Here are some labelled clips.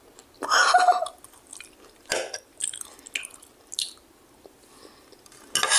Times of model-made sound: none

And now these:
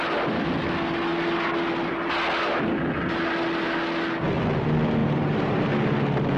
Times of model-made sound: 5.0-5.7 (vocoder, BigVGAN v2)

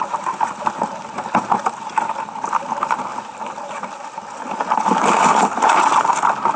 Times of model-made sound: none